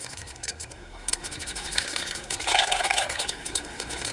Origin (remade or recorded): remade